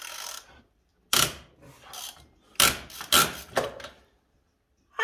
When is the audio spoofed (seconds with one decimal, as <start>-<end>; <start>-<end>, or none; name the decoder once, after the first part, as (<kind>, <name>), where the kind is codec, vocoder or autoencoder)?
0.0-0.9 (vocoder, BigVGAN v2); 3.9-5.0